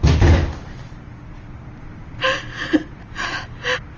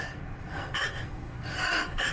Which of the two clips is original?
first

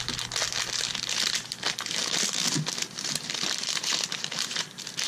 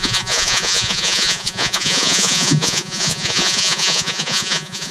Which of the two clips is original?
first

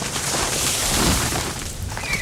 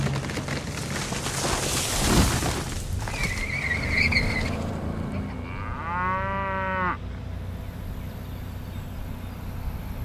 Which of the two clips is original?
second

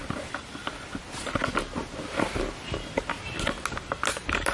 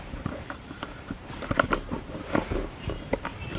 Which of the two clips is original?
first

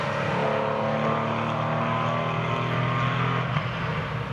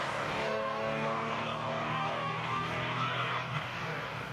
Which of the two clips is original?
first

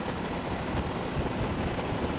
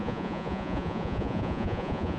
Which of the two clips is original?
first